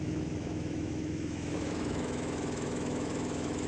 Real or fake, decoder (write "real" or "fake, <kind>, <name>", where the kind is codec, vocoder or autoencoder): fake, autoencoder, DAC-VAE